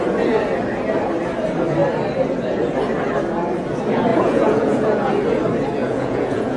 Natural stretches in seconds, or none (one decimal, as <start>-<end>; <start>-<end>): 0.0-4.1; 5.1-5.8